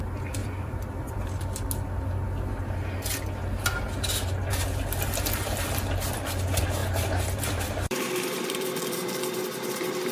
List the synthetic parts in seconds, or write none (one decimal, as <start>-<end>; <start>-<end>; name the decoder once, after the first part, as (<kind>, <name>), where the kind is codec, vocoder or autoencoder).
0.4-1.2 (vocoder, BigVGAN v2); 6.8-9.4